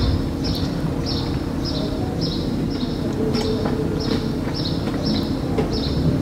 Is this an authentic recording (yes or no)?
yes